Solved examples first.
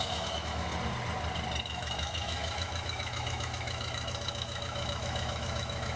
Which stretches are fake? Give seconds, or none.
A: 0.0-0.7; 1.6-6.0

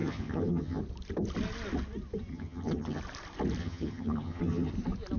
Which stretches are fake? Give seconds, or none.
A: 0.0-0.8; 2.3-3.0; 3.6-4.7

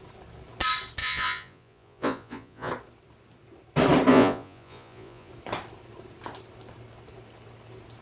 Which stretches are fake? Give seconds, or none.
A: 1.0-2.7; 4.1-5.3

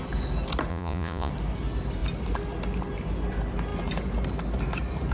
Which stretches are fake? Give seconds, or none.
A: 0.7-1.3

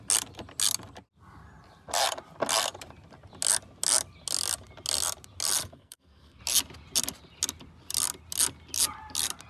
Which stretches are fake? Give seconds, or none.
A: 5.6-6.4

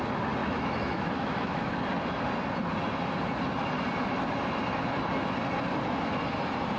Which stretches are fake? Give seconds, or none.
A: 0.4-1.7

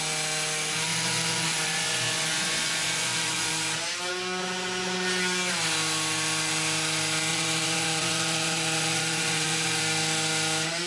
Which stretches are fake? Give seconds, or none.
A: 0.9-3.5; 7.3-9.8

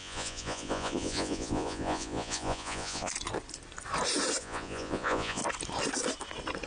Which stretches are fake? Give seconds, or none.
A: 0.0-3.1; 4.4-5.4